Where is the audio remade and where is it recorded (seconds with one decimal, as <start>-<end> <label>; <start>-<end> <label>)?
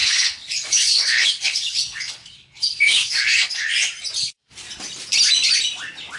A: 0.0-3.7 remade; 3.7-6.2 recorded